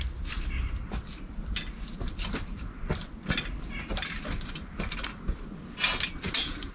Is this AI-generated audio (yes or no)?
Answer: no